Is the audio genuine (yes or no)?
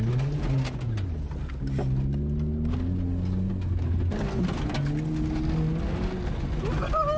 yes